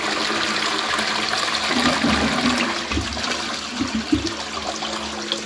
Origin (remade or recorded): recorded